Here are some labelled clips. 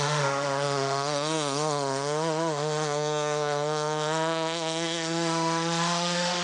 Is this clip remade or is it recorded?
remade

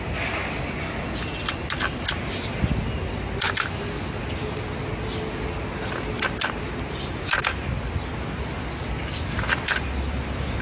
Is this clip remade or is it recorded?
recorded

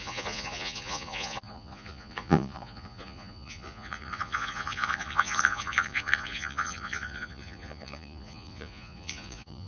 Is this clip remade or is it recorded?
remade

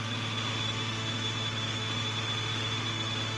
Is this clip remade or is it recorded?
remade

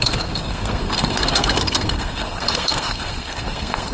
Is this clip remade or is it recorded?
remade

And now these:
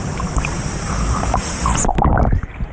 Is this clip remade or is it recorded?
remade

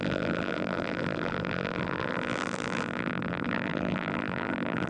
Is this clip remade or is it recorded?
remade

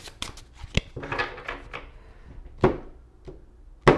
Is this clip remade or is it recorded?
recorded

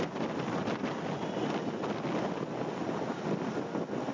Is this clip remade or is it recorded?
recorded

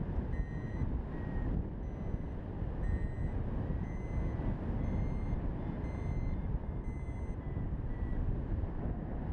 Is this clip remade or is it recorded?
recorded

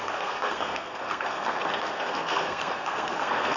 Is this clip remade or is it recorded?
remade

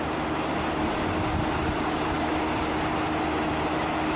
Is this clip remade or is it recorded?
recorded